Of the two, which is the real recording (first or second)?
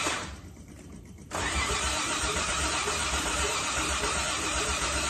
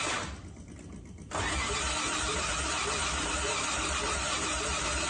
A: second